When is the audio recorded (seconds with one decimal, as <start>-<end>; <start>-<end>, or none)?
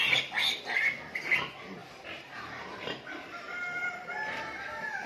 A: 0.0-1.8; 4.1-5.1